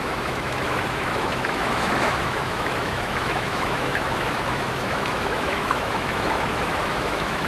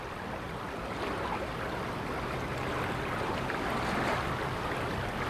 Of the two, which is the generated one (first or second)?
first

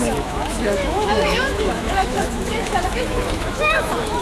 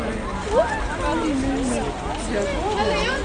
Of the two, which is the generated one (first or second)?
first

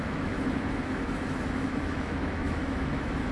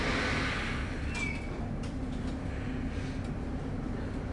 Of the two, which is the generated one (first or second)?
first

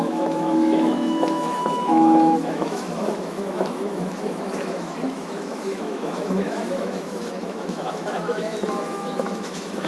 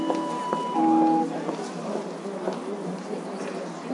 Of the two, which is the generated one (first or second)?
first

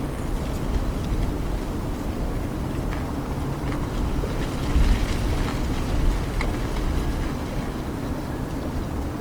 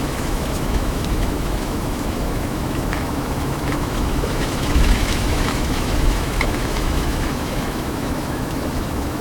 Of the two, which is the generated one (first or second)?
second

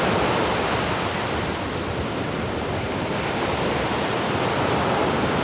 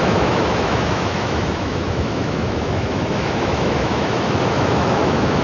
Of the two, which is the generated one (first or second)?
second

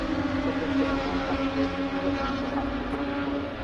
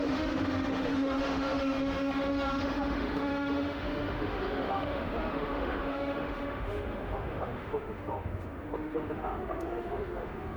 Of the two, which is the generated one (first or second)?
second